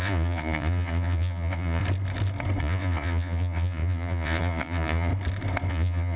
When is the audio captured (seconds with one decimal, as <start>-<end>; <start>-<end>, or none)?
1.8-2.6; 5.1-5.7